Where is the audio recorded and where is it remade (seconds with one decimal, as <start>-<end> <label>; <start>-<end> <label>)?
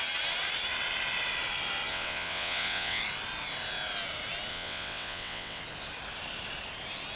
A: 0.0-1.9 recorded; 1.9-3.0 remade; 3.0-4.5 recorded; 4.5-5.6 remade; 5.6-7.2 recorded